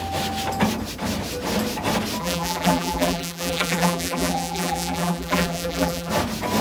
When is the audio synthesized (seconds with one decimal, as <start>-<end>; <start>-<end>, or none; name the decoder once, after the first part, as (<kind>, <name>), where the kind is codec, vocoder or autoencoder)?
2.2-6.1 (vocoder, BigVGAN v2)